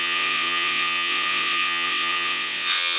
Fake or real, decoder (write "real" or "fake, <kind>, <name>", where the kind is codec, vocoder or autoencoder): fake, vocoder, WaveNeXt